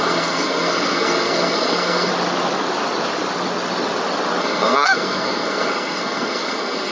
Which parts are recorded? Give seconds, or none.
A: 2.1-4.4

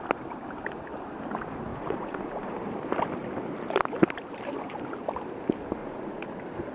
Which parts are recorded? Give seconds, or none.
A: 0.0-1.7; 2.5-5.8; 6.3-6.7

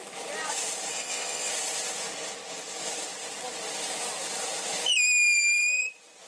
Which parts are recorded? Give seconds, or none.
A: 0.0-0.9; 1.5-6.3

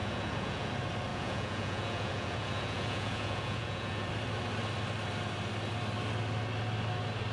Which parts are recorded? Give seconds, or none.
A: 0.7-1.1; 4.1-7.3

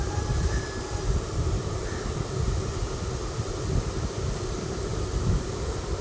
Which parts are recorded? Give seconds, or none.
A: 0.0-6.0

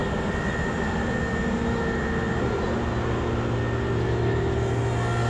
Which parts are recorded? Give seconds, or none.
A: 0.0-5.3

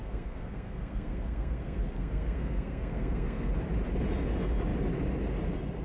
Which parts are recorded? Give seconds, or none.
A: 3.5-5.8

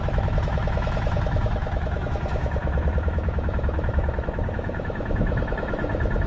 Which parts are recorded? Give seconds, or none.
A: none